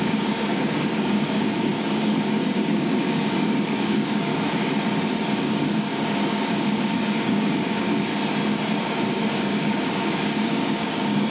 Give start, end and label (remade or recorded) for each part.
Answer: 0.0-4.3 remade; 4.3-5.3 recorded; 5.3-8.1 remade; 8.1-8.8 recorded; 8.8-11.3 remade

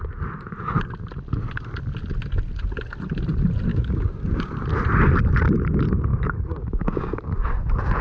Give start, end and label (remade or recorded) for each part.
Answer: 0.0-3.7 recorded; 3.7-4.5 remade; 4.5-6.1 recorded; 6.1-7.2 remade; 7.2-8.0 recorded

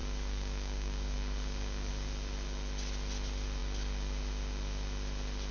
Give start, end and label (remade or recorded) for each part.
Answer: 0.0-1.9 remade; 1.9-5.5 recorded

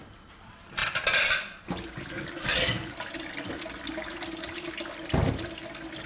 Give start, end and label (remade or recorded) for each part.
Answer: 0.0-6.1 recorded

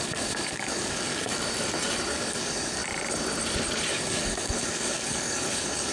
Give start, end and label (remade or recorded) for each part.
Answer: 0.0-1.3 remade; 1.3-2.1 recorded; 2.1-2.8 remade; 2.8-3.9 recorded; 3.9-5.9 remade

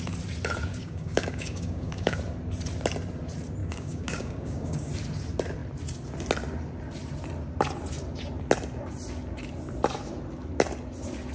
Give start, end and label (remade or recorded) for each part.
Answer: 0.0-0.7 recorded; 0.7-2.2 remade; 2.2-3.6 recorded; 3.6-4.9 remade; 4.9-11.3 recorded

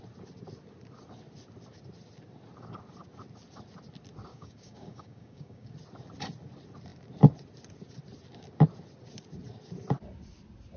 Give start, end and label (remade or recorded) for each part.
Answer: 0.0-4.3 recorded; 4.3-5.7 remade; 5.7-10.8 recorded

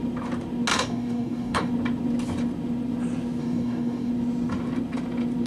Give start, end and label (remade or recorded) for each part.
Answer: 0.0-0.7 recorded; 0.7-1.7 remade; 1.7-3.4 recorded; 3.4-4.1 remade; 4.1-5.5 recorded